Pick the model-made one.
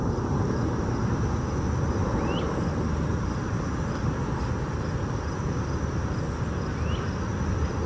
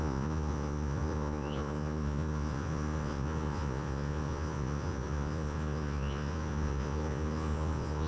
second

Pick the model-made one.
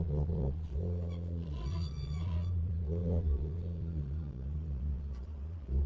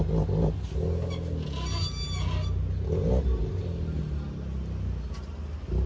first